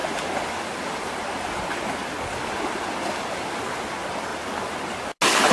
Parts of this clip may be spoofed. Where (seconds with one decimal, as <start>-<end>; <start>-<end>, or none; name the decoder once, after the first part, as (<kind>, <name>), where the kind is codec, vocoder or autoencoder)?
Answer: none